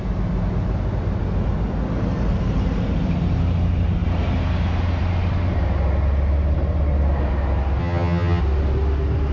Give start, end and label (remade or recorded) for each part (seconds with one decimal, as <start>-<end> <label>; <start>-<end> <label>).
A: 0.0-7.8 recorded; 7.8-8.4 remade; 8.4-9.3 recorded